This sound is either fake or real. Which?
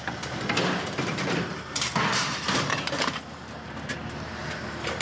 fake